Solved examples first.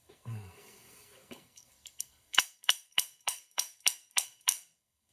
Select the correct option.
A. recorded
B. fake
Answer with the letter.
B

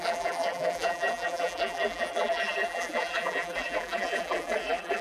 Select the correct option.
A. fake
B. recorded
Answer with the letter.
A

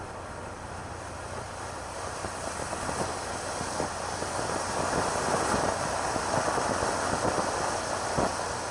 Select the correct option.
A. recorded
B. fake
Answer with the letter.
A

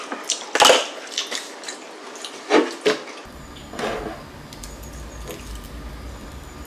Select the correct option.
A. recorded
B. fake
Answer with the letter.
A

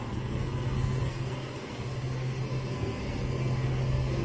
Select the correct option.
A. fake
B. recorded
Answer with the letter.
A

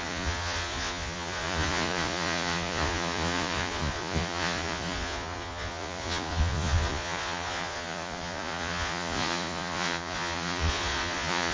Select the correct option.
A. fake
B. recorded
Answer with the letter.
A